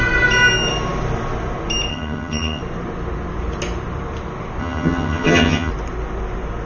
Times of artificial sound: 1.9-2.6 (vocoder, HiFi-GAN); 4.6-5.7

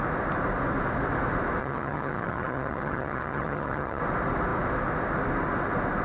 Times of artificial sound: 1.6-4.0 (vocoder, HiFi-GAN)

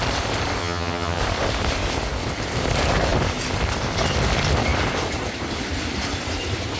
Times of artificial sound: 0.6-1.2 (vocoder, HiFi-GAN)

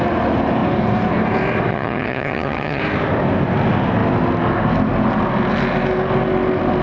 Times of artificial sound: 1.7-2.8 (vocoder, HiFi-GAN)

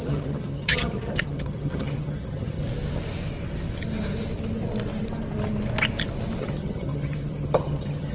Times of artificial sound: 0.0-2.6 (vocoder, HiFi-GAN); 6.4-8.1

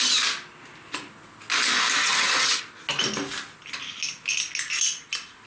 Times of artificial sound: 2.0-2.6 (vocoder, HiFi-GAN)

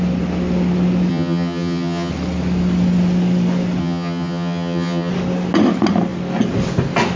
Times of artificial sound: 1.1-2.1 (vocoder, HiFi-GAN); 3.8-5.1

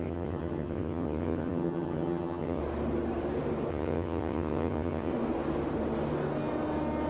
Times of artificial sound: 0.0-2.6 (vocoder, HiFi-GAN); 3.7-5.1